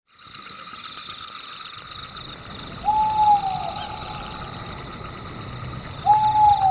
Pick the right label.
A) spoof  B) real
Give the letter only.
B